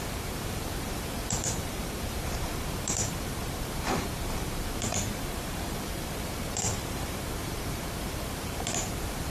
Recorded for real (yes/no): no